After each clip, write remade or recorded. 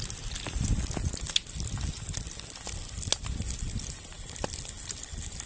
recorded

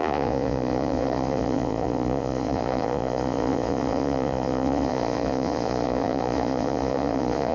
remade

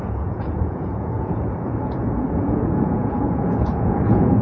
remade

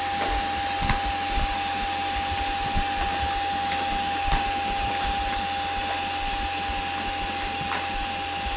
recorded